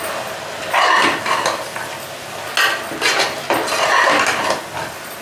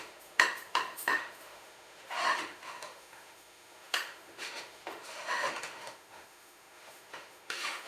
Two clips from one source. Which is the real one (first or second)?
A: first